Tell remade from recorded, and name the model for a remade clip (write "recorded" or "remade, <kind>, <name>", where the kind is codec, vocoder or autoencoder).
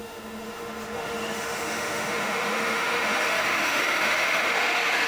remade, autoencoder, DAC-VAE